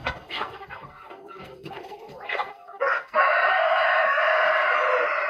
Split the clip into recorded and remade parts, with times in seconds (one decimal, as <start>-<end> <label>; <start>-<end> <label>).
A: 0.0-3.2 remade; 3.2-5.3 recorded